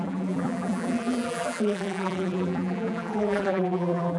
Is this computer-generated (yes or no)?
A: yes